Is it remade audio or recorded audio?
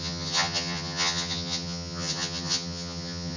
remade